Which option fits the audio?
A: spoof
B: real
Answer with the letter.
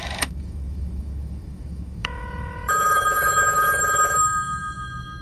A